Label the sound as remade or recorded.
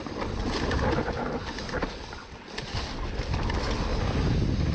recorded